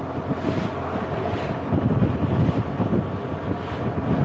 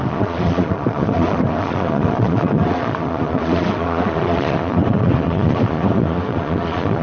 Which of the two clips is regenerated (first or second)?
second